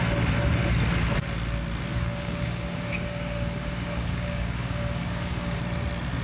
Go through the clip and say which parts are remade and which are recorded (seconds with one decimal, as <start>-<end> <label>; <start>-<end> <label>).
0.0-1.9 recorded; 1.9-5.6 remade; 5.6-6.2 recorded